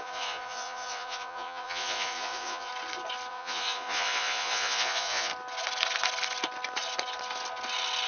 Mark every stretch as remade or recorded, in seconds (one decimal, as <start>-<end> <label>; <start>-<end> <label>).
0.0-2.7 remade; 2.7-3.3 recorded; 3.3-5.3 remade; 5.3-8.1 recorded